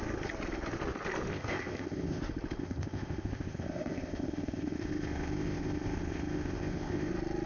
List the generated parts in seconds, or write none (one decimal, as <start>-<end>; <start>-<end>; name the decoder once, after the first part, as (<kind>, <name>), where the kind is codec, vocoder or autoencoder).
1.3-2.2 (codec, ZipCodec); 2.6-7.1